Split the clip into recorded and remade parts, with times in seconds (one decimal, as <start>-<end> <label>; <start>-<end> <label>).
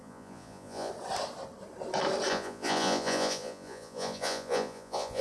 0.0-0.9 remade; 0.9-2.3 recorded; 2.3-5.2 remade